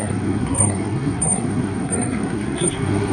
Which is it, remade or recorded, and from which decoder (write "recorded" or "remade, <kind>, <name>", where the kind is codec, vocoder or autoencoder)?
remade, codec, SNAC